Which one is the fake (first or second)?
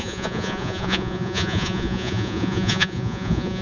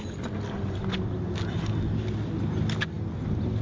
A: first